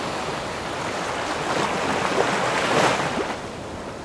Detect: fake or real real